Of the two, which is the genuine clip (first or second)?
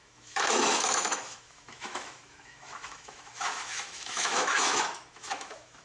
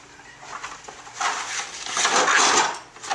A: second